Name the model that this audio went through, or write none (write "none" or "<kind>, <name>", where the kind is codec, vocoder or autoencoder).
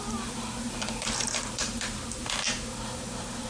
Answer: vocoder, BigVGAN v2